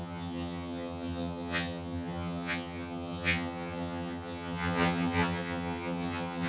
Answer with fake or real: fake